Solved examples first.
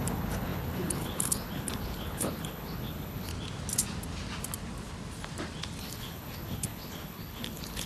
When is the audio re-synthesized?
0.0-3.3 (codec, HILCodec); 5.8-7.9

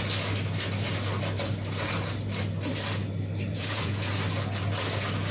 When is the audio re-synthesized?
3.5-4.1 (vocoder, Vocos)

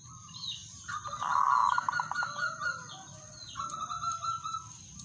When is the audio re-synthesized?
none

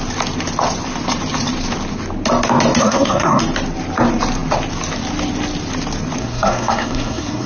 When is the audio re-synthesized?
2.8-3.4 (codec, SNAC); 6.2-7.5

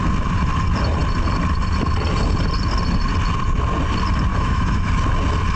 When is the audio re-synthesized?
4.3-4.9 (autoencoder, DAC-VAE)

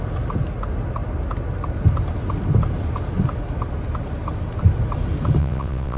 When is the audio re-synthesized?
5.4-6.0 (vocoder, WaveNeXt)